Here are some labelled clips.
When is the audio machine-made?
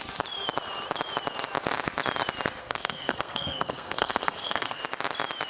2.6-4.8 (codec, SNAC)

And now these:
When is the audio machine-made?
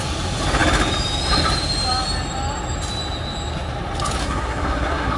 4.2-5.2 (codec, SNAC)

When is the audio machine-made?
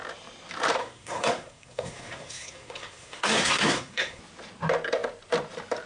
0.8-4.2 (codec, SNAC)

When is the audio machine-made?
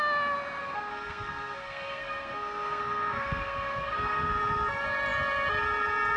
0.6-4.3 (codec, SNAC)